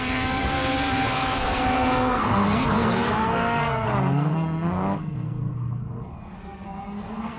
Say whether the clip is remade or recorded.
remade